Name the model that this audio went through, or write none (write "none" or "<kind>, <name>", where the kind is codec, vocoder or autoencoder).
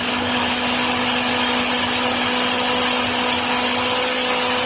none